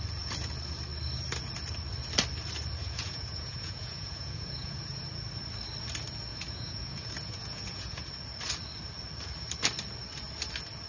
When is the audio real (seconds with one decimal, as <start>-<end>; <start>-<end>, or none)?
0.0-2.8; 5.0-6.3; 8.1-10.9